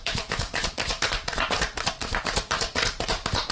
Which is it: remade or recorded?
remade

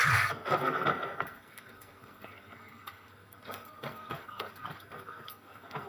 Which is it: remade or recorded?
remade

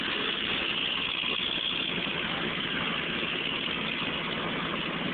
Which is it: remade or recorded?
recorded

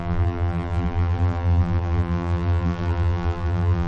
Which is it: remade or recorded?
remade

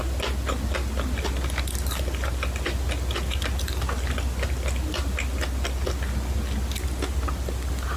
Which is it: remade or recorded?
recorded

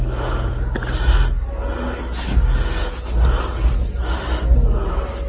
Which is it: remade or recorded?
recorded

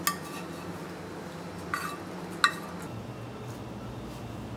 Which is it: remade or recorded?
recorded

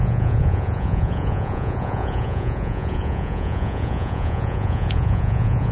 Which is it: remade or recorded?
remade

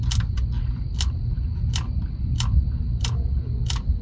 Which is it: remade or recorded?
recorded